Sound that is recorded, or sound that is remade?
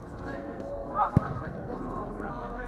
remade